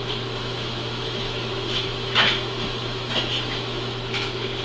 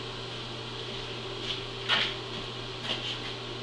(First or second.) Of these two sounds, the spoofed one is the first